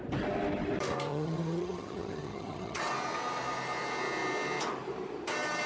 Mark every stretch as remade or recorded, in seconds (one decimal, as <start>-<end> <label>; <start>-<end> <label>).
0.0-1.1 recorded; 1.1-2.8 remade; 2.8-5.7 recorded